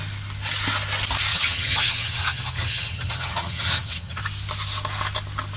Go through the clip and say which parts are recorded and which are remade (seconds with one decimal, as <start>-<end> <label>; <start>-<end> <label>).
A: 0.0-1.3 recorded; 1.3-4.2 remade; 4.2-5.6 recorded